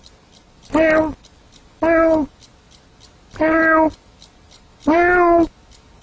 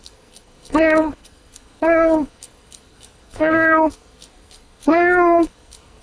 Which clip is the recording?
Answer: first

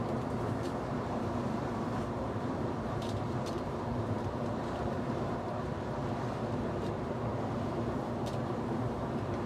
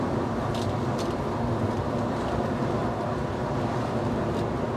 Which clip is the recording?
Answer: second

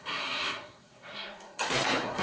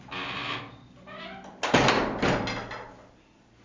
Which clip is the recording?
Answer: second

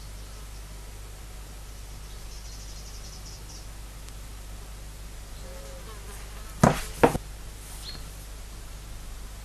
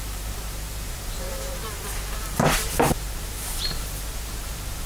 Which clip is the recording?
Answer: first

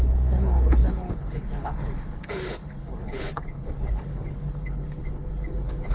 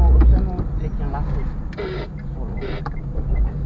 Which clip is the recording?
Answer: second